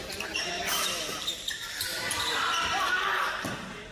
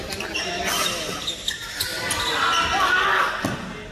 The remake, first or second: first